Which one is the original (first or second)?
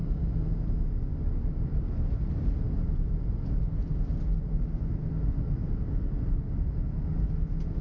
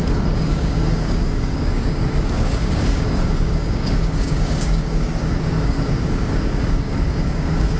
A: first